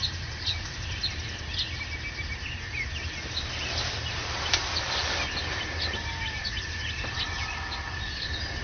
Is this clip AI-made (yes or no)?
no